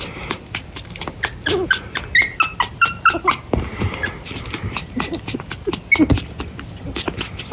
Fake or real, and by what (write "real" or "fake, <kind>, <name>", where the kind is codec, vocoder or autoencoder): real